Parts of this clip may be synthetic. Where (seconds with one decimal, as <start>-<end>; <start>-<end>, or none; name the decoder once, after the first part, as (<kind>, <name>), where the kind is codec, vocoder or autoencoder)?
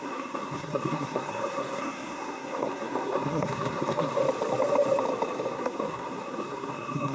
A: 0.0-4.2 (codec, SNAC); 5.5-7.1